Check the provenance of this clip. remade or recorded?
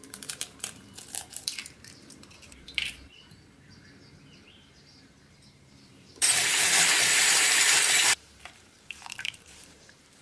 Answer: remade